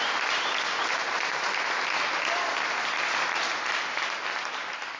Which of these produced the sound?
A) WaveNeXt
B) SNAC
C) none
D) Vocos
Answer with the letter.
C